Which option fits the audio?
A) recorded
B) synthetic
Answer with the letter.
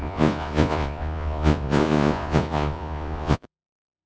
B